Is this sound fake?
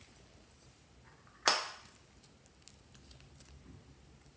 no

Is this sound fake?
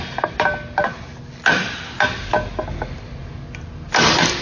no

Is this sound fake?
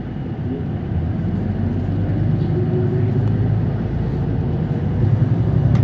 no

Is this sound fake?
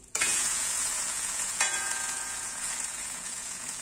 yes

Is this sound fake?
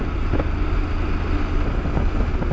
no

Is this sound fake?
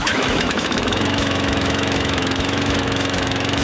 yes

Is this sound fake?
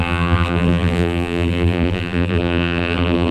yes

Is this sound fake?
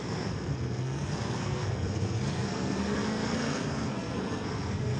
yes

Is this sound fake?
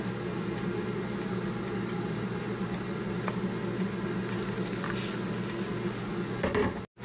no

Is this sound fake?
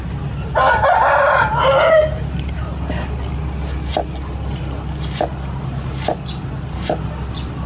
no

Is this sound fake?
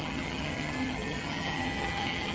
yes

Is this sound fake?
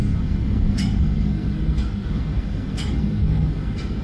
yes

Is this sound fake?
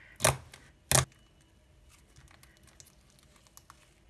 no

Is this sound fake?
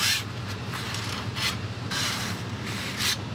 yes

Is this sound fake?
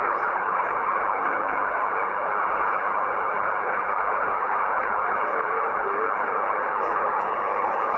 yes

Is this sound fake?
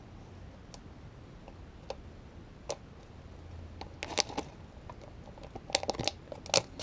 no